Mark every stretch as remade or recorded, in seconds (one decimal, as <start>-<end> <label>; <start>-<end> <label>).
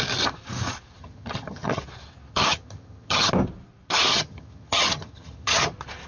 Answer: 0.0-1.0 recorded; 1.0-1.8 remade; 1.8-2.3 recorded; 2.3-3.3 remade; 3.3-4.1 recorded; 4.1-5.6 remade; 5.6-6.1 recorded